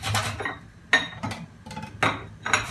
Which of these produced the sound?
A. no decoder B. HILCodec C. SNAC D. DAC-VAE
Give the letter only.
A